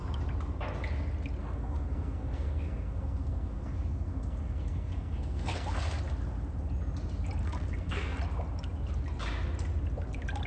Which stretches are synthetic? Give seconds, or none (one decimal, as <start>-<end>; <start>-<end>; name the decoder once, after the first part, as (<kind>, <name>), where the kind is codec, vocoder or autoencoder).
1.4-6.0 (codec, SNAC); 7.4-8.2